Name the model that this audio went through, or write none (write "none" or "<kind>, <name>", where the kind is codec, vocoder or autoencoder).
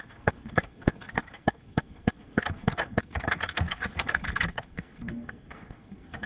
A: codec, SNAC